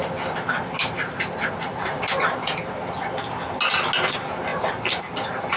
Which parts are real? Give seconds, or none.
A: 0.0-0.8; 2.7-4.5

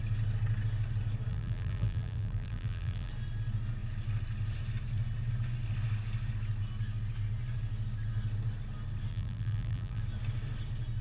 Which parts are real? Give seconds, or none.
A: 0.0-1.3; 3.1-9.1; 10.0-11.0

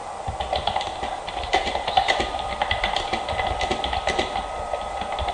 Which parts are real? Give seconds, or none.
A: 3.2-5.3

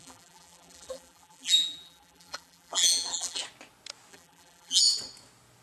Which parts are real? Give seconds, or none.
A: 3.4-4.1; 4.8-5.6

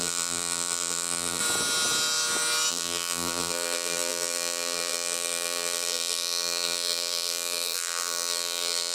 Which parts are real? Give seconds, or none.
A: 1.4-2.7

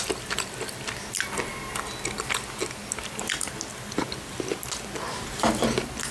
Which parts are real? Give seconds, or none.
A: 0.0-6.1

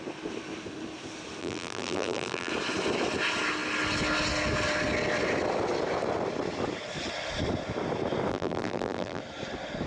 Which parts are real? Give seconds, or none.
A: 0.0-1.4; 2.5-8.3; 9.2-9.9